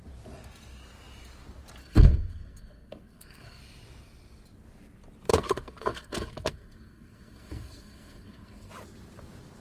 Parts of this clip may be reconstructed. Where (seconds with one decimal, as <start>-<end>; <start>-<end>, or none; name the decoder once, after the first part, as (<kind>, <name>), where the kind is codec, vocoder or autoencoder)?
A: 1.8-3.6 (codec, SNAC); 5.3-8.7